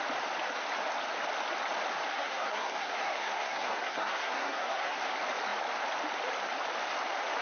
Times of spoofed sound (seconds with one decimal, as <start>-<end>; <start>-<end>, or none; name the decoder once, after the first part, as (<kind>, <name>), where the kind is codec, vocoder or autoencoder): 2.1-5.0 (codec, SNAC)